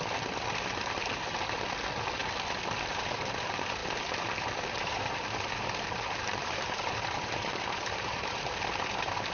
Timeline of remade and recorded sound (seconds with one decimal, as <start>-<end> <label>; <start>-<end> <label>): 0.0-3.8 recorded; 3.8-8.6 remade; 8.6-9.3 recorded